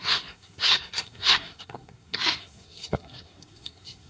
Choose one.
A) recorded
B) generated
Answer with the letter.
B